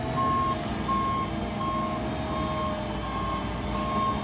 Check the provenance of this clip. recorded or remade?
recorded